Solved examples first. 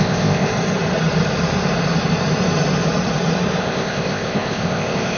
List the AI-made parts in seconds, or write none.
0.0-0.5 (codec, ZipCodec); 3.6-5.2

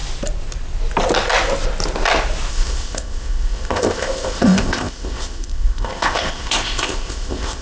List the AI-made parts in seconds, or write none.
2.5-7.6 (codec, ZipCodec)

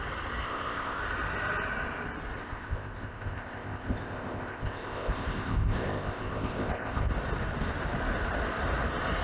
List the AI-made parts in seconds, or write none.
0.4-1.0 (codec, ZipCodec); 2.4-7.1

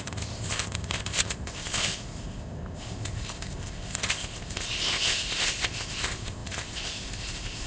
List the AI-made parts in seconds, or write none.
0.0-7.7 (codec, ZipCodec)

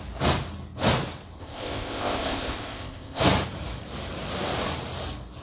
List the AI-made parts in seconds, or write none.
1.4-3.2 (codec, ZipCodec)

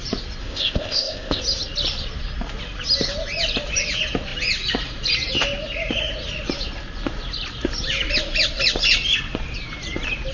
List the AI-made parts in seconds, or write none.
0.4-1.4 (codec, ZipCodec)